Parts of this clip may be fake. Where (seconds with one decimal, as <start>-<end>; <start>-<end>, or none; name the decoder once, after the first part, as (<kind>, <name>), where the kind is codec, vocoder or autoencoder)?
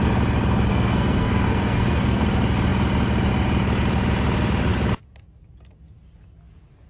0.7-2.2 (codec, SNAC)